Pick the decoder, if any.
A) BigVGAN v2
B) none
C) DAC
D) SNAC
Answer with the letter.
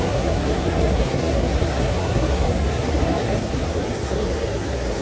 D